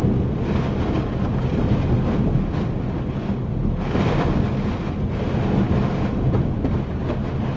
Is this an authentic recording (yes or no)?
yes